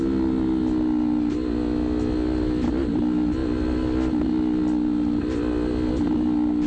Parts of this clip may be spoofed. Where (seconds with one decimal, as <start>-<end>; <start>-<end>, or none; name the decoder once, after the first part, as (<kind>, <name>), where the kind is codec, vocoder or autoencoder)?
none